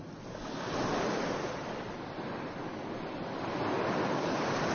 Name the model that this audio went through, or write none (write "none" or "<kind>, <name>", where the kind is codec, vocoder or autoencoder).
none